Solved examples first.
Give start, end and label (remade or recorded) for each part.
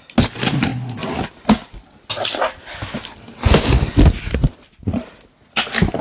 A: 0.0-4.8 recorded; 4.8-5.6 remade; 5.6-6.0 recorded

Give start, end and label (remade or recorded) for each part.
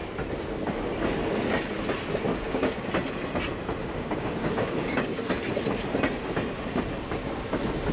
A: 0.0-2.3 recorded; 2.3-2.9 remade; 2.9-3.8 recorded; 3.8-5.3 remade; 5.3-7.9 recorded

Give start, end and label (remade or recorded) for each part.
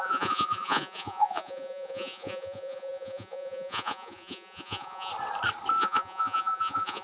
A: 0.0-5.1 remade; 5.1-5.8 recorded; 5.8-7.0 remade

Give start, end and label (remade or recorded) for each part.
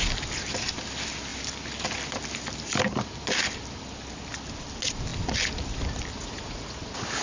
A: 0.0-6.2 recorded; 6.2-6.8 remade; 6.8-7.2 recorded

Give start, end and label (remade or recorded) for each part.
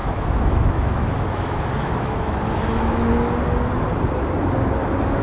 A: 0.0-3.1 remade; 3.1-5.2 recorded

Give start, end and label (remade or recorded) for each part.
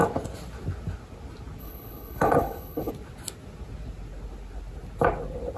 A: 0.0-1.6 recorded; 1.6-2.9 remade; 2.9-5.6 recorded